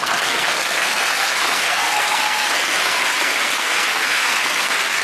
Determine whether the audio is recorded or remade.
remade